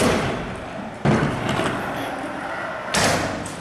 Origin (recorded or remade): recorded